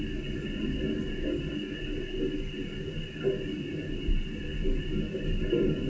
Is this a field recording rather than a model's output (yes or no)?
yes